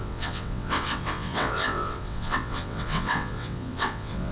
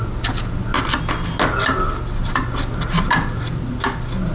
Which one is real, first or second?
second